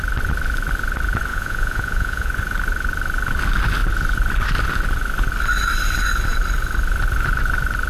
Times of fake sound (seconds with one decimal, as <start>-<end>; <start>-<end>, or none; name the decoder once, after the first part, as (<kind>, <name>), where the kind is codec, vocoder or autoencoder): 1.3-2.3 (vocoder, Vocos)